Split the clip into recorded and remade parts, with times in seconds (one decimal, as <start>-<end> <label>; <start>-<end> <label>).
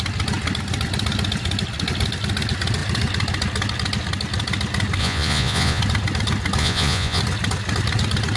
0.0-5.0 recorded; 5.0-5.8 remade; 5.8-6.6 recorded; 6.6-7.2 remade; 7.2-8.4 recorded